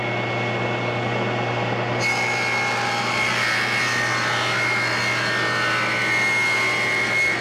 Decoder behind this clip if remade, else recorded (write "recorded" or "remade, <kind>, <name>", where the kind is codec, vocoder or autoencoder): recorded